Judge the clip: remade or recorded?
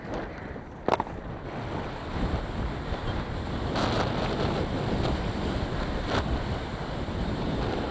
recorded